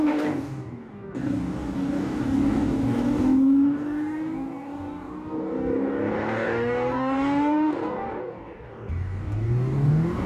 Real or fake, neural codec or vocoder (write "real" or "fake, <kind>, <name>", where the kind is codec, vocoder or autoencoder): fake, codec, DAC